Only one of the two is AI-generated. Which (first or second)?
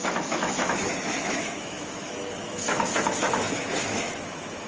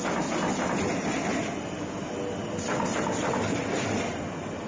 first